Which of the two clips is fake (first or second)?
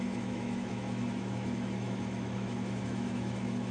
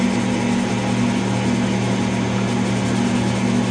first